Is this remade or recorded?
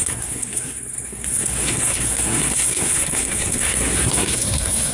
remade